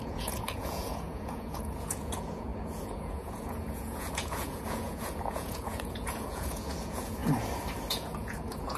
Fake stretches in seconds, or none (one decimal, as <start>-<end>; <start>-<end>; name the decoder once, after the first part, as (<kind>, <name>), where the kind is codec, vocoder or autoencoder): 0.0-7.2 (vocoder, Vocos); 7.9-8.8